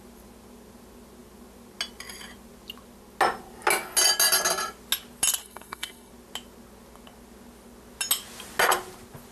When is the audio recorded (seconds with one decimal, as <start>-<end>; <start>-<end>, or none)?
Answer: 0.0-5.4; 6.1-9.3